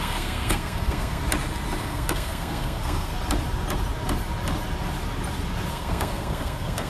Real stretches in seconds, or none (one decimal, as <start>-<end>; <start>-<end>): 1.2-1.8; 3.1-5.7